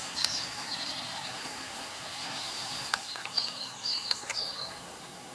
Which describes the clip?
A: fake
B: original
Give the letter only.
A